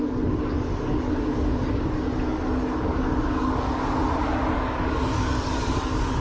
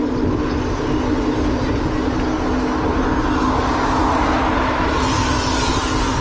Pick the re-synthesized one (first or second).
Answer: first